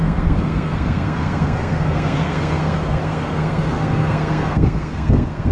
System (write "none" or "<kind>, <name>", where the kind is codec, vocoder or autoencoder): codec, SNAC